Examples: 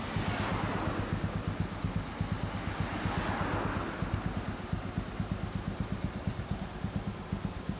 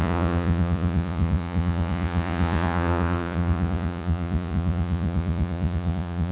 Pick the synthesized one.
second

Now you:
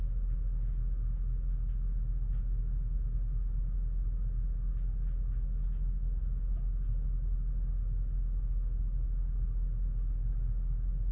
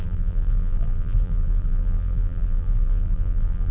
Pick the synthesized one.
second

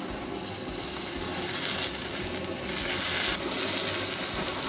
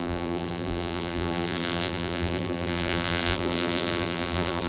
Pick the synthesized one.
second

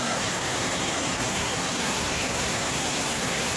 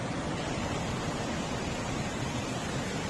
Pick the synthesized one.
first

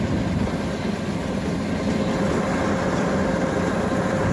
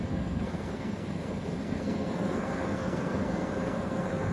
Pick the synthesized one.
second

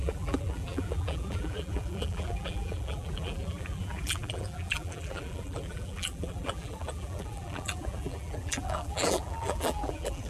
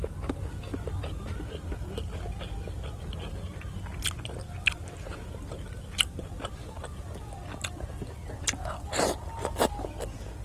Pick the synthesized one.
first